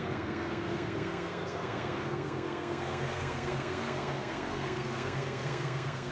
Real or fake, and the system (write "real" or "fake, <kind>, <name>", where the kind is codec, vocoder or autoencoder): fake, codec, SNAC